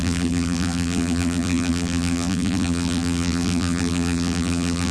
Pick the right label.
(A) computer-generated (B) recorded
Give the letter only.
A